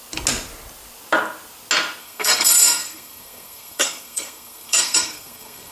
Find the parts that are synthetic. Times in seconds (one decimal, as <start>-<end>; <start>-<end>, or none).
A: 2.0-5.7